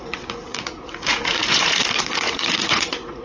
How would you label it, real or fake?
fake